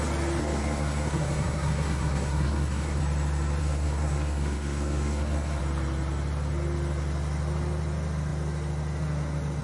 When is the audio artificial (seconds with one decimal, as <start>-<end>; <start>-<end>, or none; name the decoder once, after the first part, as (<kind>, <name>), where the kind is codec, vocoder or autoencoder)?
0.4-3.0 (codec, SNAC); 3.6-5.6